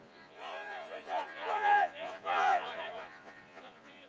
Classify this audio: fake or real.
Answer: fake